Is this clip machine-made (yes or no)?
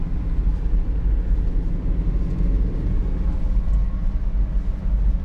no